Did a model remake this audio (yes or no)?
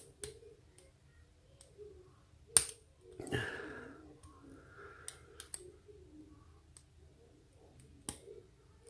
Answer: no